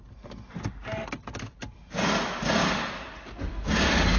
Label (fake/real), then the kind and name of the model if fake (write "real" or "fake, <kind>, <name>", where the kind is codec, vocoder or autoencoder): real